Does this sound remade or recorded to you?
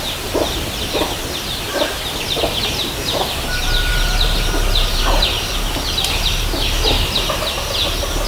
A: recorded